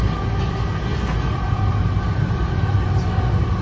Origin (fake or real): real